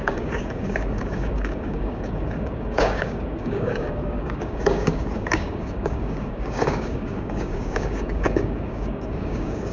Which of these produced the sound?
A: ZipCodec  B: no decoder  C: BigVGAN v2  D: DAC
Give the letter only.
D